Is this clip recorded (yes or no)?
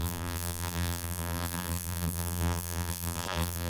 no